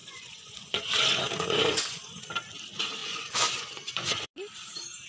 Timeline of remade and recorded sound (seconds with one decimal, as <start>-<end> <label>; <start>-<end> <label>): 0.0-2.2 remade; 2.2-3.0 recorded; 3.0-4.3 remade; 4.3-5.1 recorded